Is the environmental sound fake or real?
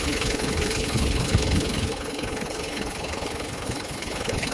fake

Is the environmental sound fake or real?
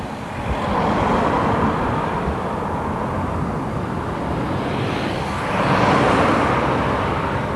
real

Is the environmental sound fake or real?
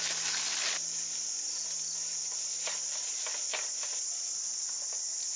real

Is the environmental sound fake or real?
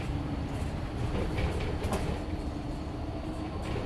real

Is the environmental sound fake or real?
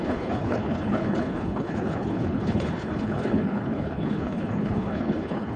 fake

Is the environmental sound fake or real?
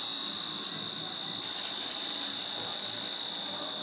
real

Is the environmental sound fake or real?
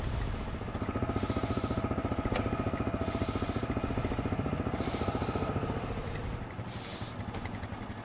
real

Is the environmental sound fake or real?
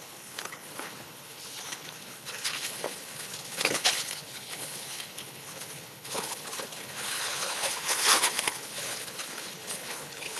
fake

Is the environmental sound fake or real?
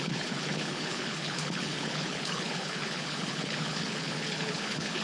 fake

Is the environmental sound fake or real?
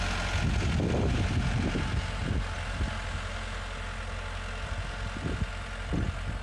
real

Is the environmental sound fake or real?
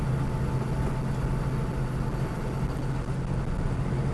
real